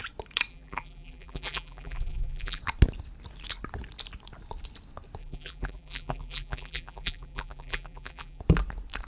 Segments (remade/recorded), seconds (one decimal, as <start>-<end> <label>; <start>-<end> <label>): 0.0-0.5 recorded; 0.5-2.6 remade; 2.6-5.2 recorded; 5.2-8.4 remade; 8.4-9.1 recorded